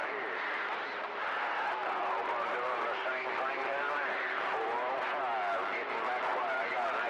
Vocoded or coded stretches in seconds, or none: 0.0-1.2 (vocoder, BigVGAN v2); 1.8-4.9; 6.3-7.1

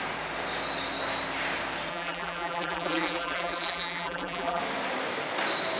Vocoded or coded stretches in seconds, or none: 1.9-4.6 (vocoder, BigVGAN v2)

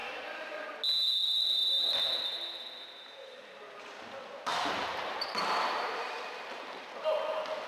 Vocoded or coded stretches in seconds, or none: 0.0-0.7 (vocoder, BigVGAN v2); 4.5-6.8

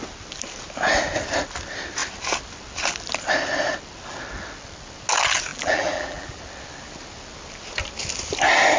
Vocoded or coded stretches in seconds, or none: 5.5-6.4 (vocoder, BigVGAN v2)

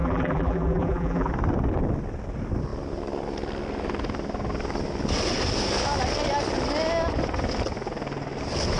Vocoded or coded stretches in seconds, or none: 0.0-1.3 (vocoder, BigVGAN v2)

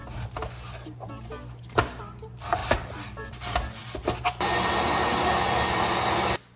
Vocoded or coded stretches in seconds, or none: 2.6-3.3 (vocoder, BigVGAN v2)

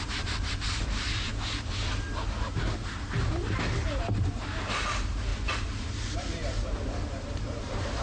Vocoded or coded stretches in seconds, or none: 0.0-1.3 (vocoder, BigVGAN v2); 4.3-5.3; 6.1-8.0

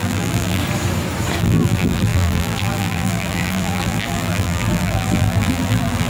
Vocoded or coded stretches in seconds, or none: 0.0-0.6 (vocoder, BigVGAN v2); 1.4-6.1